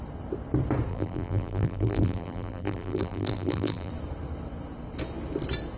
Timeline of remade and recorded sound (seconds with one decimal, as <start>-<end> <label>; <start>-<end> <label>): 0.0-0.9 recorded; 0.9-3.9 remade; 3.9-5.8 recorded